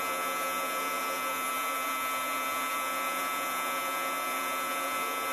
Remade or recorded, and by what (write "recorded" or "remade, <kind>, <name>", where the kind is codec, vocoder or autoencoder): remade, vocoder, Vocos